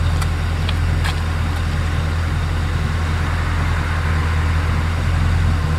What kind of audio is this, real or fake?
real